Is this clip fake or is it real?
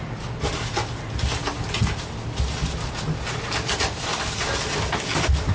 real